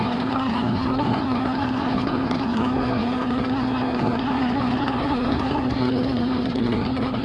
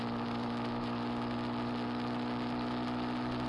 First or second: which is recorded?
second